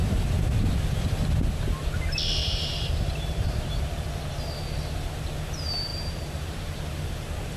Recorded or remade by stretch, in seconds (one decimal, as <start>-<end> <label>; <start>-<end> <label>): 0.0-2.4 recorded; 2.4-4.4 remade; 4.4-5.9 recorded; 5.9-7.0 remade; 7.0-7.6 recorded